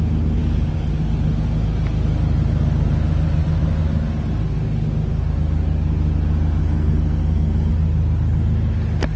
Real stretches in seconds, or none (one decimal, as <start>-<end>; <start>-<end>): 0.0-6.6; 7.7-9.2